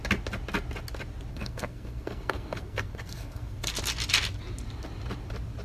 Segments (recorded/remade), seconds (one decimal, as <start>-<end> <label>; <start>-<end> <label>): 0.0-1.3 recorded; 1.3-3.7 remade; 3.7-5.6 recorded